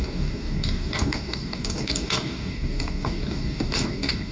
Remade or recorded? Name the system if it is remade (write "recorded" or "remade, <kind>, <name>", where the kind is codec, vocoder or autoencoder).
remade, codec, DAC